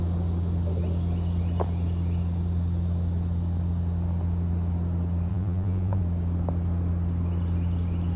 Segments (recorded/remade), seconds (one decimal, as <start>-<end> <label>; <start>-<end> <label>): 0.0-5.3 recorded; 5.3-6.0 remade; 6.0-8.2 recorded